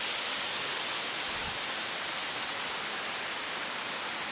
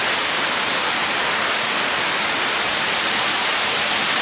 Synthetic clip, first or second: first